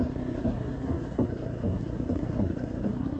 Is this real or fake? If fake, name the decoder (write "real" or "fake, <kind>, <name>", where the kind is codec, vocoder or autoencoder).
fake, codec, SNAC